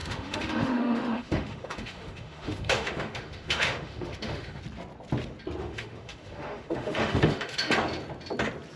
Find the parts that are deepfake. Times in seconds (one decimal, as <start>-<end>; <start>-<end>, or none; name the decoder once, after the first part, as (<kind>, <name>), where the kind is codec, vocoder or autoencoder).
0.0-4.6 (autoencoder, DAC-VAE); 5.6-7.7